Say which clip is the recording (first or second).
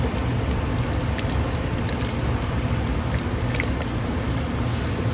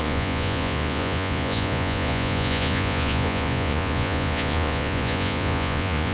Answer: first